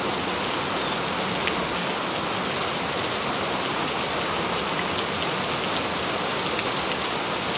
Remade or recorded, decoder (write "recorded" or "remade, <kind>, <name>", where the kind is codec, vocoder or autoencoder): recorded